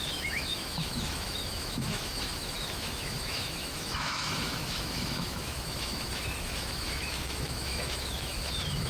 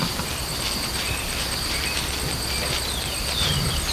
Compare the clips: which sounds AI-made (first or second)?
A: first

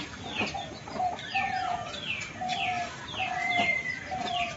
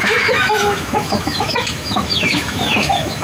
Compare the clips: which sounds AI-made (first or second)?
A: second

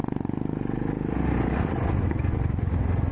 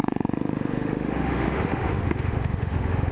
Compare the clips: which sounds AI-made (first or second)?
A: second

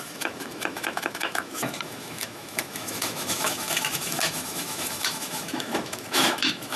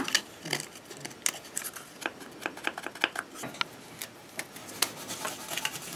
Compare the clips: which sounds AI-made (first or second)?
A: first